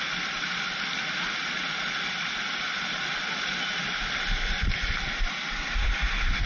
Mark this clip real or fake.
real